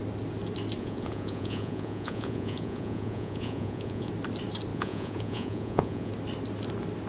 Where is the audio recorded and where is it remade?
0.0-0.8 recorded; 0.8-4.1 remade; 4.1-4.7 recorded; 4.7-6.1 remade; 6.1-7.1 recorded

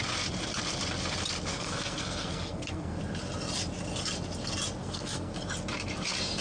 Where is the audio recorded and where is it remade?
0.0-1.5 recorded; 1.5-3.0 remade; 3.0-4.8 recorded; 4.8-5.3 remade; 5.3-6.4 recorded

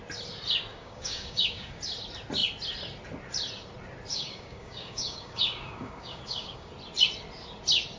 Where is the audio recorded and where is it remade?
0.0-0.7 recorded; 0.7-1.8 remade; 1.8-4.1 recorded; 4.1-6.7 remade; 6.7-8.0 recorded

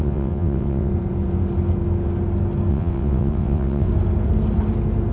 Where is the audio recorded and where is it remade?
0.0-0.9 remade; 0.9-2.7 recorded; 2.7-3.9 remade; 3.9-5.1 recorded